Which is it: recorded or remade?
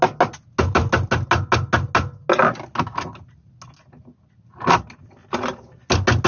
recorded